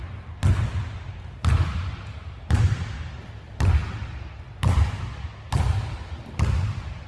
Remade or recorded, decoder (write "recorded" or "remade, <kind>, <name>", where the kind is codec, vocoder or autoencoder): recorded